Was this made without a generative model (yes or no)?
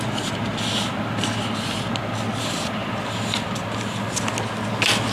yes